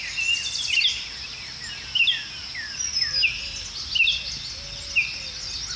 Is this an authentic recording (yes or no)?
yes